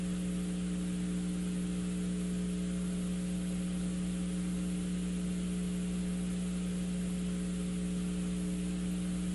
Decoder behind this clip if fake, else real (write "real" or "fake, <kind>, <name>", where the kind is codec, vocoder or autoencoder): real